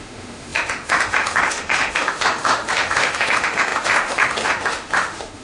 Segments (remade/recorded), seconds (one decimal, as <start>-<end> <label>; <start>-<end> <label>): 0.0-5.4 remade